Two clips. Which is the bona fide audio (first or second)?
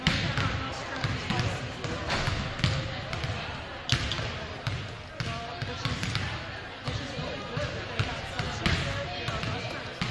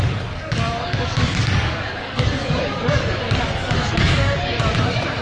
first